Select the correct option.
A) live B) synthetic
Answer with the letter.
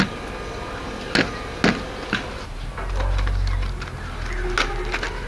A